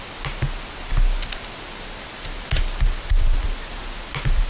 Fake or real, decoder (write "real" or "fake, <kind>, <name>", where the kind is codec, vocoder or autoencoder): real